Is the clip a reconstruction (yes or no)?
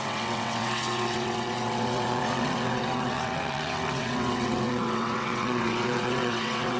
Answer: yes